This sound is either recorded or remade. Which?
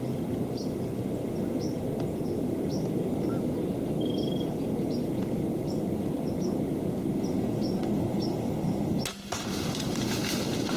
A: recorded